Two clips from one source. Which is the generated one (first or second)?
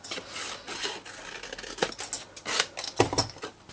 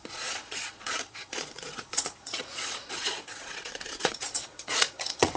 second